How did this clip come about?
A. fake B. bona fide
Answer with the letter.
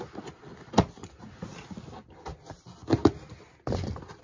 B